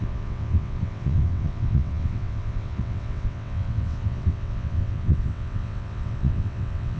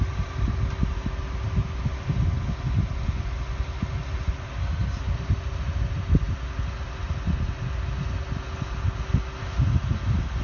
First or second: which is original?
second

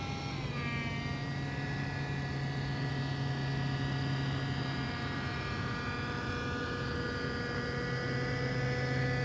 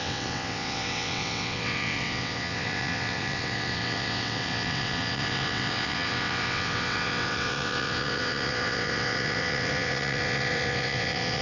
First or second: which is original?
first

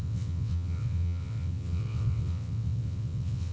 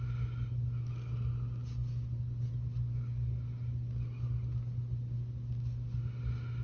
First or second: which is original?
second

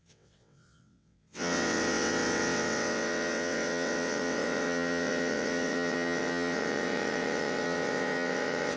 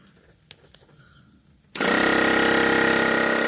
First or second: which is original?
second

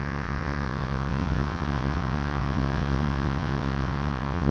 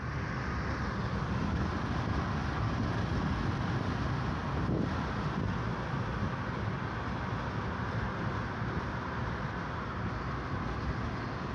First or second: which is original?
second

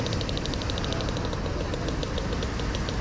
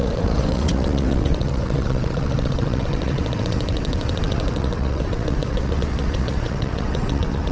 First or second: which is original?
first